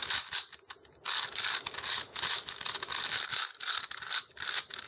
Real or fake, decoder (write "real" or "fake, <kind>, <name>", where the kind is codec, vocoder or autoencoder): real